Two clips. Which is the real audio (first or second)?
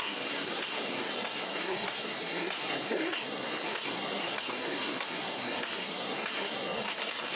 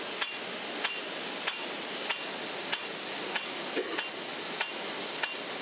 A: second